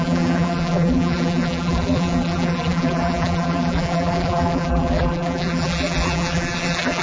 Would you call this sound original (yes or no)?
no